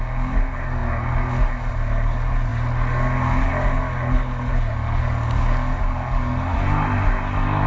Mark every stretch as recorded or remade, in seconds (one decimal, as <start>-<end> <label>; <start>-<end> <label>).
0.0-7.7 recorded